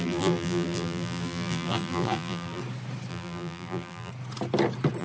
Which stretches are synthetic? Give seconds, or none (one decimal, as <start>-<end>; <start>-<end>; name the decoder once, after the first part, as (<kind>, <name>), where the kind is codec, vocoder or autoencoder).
0.0-2.6 (vocoder, BigVGAN v2); 3.1-4.1